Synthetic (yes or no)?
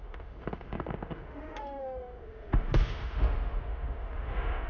yes